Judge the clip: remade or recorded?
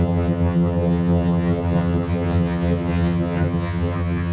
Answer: remade